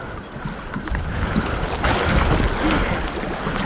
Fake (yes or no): no